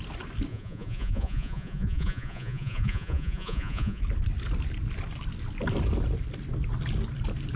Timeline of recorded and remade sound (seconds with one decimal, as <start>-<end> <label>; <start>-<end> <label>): 0.0-0.5 recorded; 0.5-4.0 remade; 4.0-7.6 recorded